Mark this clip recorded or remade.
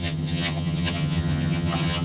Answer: remade